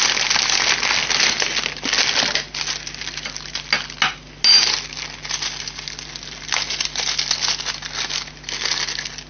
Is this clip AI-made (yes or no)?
no